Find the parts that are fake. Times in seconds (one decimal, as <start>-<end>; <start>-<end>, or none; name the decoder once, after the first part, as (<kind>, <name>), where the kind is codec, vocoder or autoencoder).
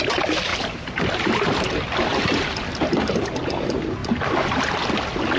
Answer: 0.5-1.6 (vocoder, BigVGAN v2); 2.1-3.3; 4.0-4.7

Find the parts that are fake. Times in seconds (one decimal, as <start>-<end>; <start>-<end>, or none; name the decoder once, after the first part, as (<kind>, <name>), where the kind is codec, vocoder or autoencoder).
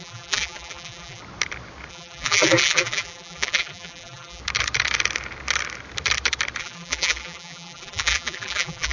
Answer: 0.0-1.2 (vocoder, BigVGAN v2); 1.9-4.4; 6.6-8.9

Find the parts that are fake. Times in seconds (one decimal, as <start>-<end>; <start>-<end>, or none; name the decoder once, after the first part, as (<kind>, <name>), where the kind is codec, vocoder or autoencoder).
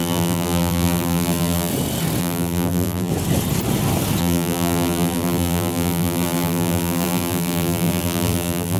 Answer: 0.0-1.7 (vocoder, BigVGAN v2); 2.2-3.1; 4.2-8.8